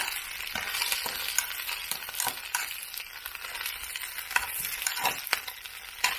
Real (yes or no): yes